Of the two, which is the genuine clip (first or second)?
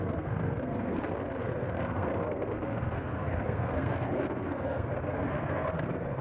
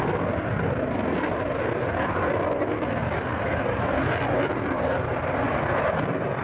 second